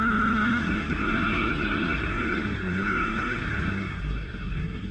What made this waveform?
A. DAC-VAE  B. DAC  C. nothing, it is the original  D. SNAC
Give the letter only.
D